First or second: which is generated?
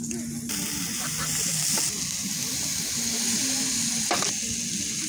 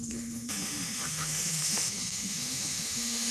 second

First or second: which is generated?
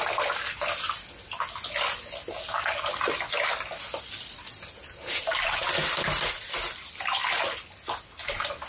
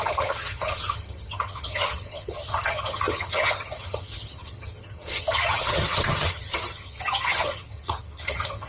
second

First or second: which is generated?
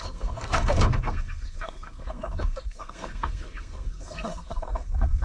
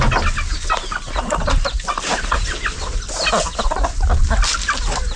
first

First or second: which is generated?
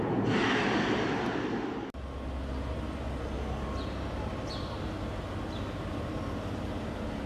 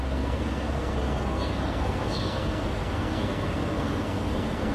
second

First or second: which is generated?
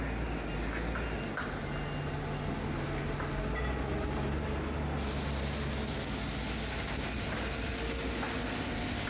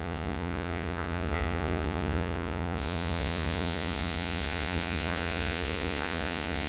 second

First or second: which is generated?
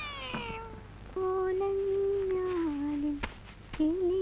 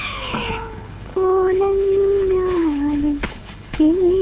second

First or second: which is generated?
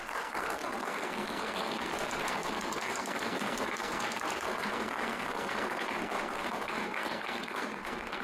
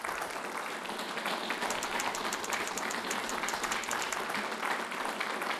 first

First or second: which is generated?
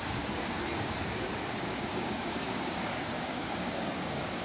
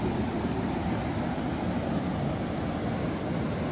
first